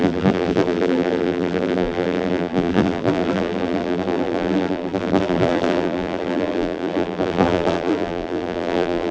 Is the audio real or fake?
fake